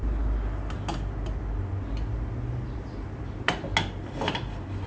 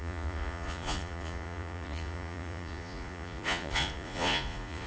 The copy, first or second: second